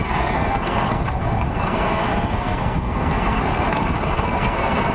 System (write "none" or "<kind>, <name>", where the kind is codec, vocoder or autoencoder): codec, SNAC